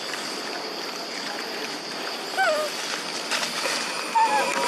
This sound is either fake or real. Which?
real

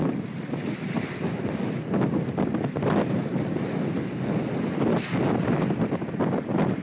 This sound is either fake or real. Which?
real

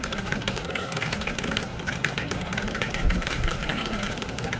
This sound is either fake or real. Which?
fake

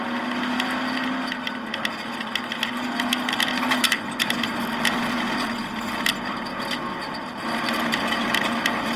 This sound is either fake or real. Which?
real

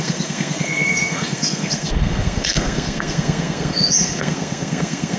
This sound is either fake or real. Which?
fake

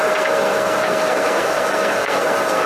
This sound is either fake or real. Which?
fake